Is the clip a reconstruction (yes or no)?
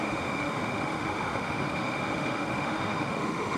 yes